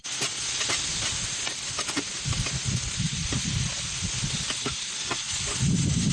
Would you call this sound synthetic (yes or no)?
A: no